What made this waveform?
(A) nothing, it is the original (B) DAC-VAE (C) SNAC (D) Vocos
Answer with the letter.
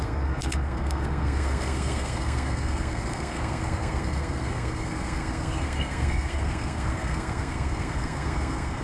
C